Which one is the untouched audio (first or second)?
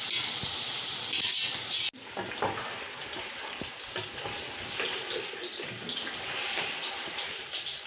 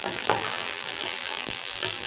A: first